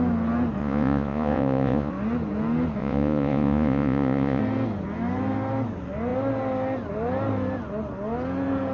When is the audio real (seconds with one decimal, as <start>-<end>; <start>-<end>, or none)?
0.0-0.6; 1.9-2.8; 4.4-8.7

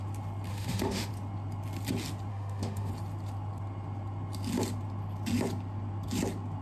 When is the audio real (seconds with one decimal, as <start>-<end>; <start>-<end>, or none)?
0.0-0.5; 1.1-2.3; 2.9-6.6

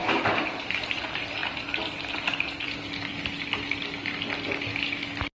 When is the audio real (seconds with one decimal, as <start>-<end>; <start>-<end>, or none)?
0.0-5.4

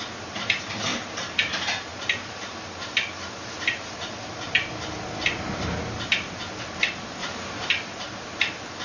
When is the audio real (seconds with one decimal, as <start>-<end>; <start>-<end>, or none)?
0.0-0.9; 1.5-7.2; 7.7-8.8

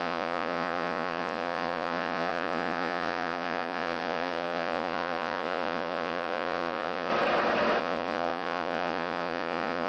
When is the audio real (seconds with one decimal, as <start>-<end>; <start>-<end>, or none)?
7.1-7.8